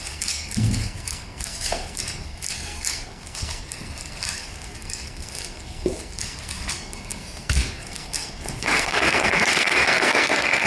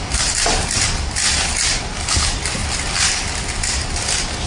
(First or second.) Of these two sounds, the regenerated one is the first